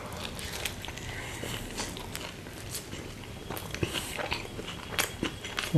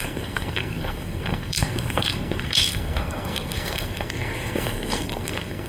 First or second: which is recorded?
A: first